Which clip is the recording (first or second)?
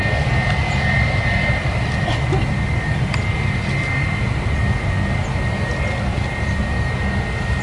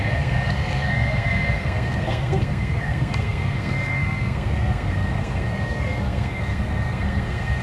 first